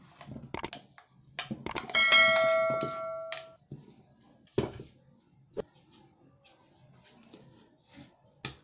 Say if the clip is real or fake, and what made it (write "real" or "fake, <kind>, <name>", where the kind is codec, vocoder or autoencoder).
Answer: real